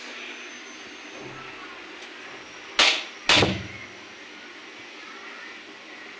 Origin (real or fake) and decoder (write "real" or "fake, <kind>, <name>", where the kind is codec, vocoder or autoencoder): real